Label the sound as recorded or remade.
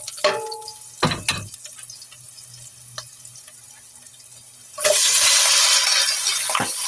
recorded